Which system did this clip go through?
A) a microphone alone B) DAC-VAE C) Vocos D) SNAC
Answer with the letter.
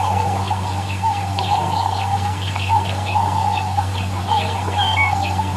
D